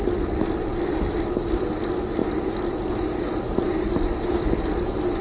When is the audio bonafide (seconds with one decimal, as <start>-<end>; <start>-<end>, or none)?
0.0-5.2